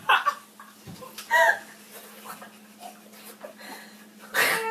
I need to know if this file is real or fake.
real